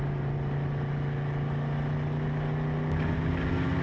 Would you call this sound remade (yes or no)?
no